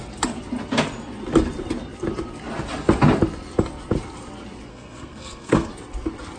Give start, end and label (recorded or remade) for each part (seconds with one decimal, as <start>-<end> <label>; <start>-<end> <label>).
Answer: 0.0-4.7 recorded; 4.7-5.7 remade; 5.7-6.4 recorded